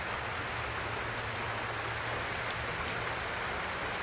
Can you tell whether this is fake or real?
real